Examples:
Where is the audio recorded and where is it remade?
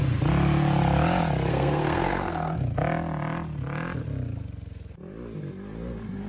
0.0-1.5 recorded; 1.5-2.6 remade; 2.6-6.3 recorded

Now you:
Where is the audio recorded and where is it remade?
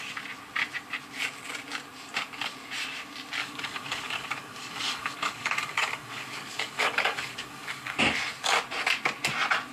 0.0-3.4 recorded; 3.4-8.0 remade; 8.0-9.7 recorded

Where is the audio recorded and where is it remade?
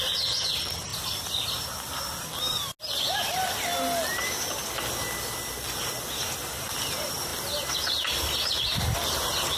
0.0-9.6 recorded